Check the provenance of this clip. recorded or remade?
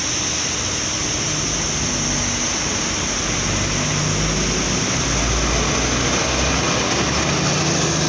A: recorded